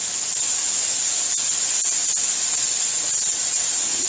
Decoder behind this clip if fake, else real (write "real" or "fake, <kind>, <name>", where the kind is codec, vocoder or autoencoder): real